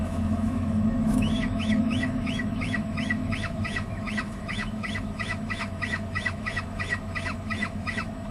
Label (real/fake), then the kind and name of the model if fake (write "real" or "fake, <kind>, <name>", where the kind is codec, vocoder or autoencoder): fake, autoencoder, DAC-VAE